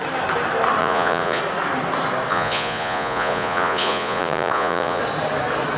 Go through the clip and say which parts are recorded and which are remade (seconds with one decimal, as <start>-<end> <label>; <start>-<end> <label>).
0.0-0.8 recorded; 0.8-1.4 remade; 1.4-2.3 recorded; 2.3-5.0 remade; 5.0-5.8 recorded